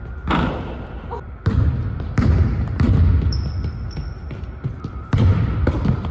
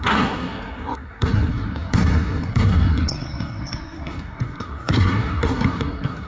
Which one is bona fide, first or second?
first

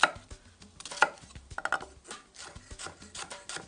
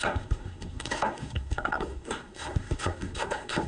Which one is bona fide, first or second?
first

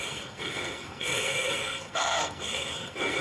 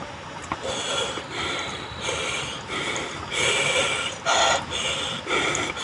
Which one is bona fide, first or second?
second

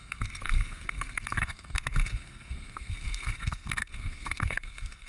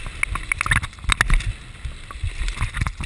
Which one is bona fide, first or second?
second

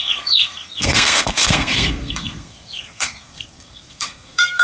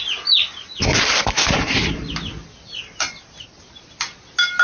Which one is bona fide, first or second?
second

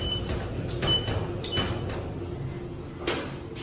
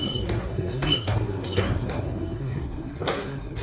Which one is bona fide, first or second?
first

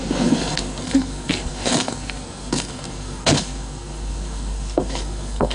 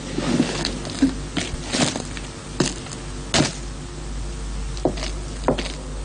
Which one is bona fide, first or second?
second